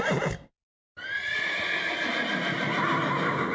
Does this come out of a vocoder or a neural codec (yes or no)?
no